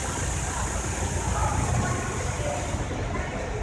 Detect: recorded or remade recorded